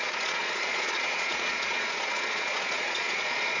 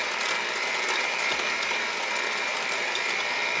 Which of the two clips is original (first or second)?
second